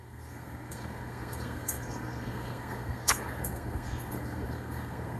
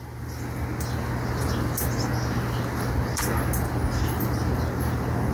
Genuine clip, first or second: second